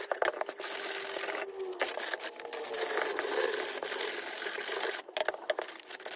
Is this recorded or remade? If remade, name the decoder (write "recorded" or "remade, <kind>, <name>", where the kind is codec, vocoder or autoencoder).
recorded